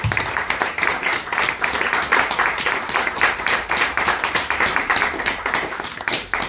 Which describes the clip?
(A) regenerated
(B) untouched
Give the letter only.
A